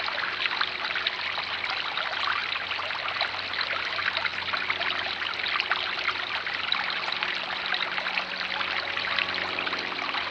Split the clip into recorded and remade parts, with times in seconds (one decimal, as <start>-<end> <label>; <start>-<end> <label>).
0.0-10.3 recorded

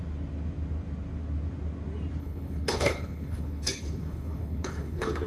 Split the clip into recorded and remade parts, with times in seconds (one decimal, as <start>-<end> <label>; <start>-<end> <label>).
0.0-2.2 recorded; 2.2-5.3 remade